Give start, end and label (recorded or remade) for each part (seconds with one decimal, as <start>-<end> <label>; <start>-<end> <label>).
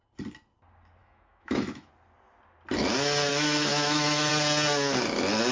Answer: 0.0-1.0 recorded; 1.0-1.9 remade; 1.9-3.3 recorded; 3.3-4.3 remade; 4.3-5.5 recorded